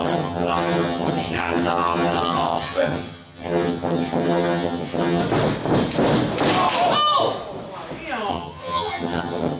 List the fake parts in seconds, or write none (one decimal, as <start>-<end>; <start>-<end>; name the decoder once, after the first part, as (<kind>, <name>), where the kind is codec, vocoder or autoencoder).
0.0-5.2 (vocoder, HiFi-GAN); 8.3-9.6